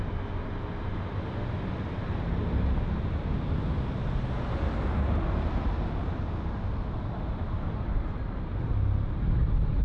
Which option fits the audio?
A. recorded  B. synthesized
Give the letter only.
A